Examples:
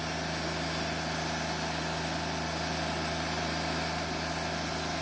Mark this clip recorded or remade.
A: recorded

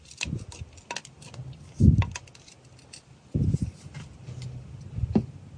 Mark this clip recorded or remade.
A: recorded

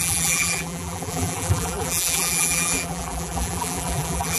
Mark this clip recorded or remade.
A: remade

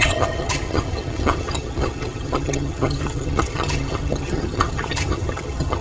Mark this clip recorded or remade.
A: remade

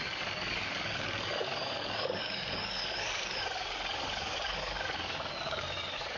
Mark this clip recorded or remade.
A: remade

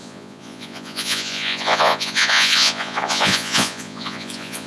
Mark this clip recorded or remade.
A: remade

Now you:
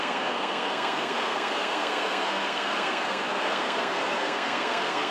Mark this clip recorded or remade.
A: remade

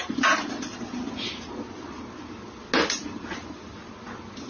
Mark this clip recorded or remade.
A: recorded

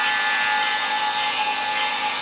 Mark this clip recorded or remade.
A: recorded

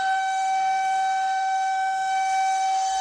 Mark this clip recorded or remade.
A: remade